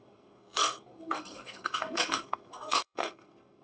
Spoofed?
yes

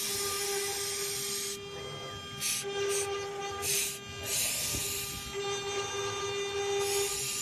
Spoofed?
no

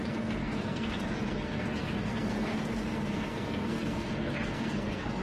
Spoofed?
yes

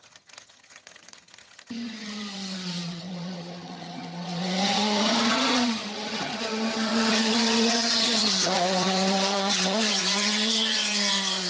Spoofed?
yes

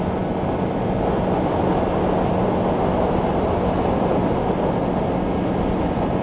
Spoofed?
no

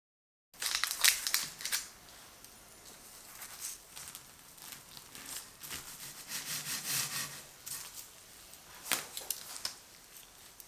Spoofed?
no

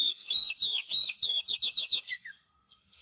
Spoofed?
yes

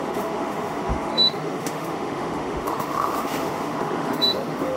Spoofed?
yes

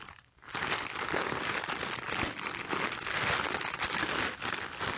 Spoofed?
no